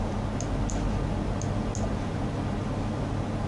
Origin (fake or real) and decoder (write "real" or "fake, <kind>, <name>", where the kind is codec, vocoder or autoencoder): real